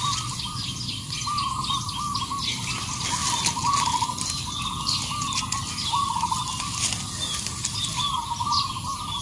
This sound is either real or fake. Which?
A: real